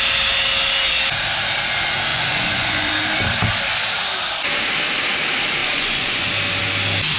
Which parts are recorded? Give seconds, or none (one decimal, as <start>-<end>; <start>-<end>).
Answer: 0.0-2.1; 2.9-5.6; 6.3-7.2